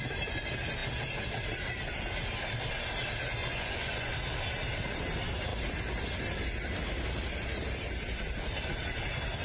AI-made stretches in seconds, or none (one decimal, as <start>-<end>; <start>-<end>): 3.4-4.1